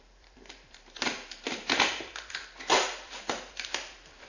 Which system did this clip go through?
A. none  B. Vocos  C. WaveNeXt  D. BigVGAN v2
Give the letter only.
D